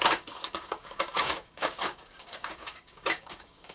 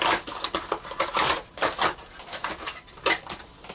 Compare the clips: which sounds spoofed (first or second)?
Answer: first